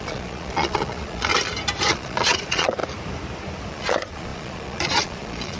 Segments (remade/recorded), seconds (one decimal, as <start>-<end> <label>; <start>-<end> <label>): 0.0-1.3 remade; 1.3-1.9 recorded; 1.9-2.8 remade; 2.8-3.7 recorded; 3.7-5.6 remade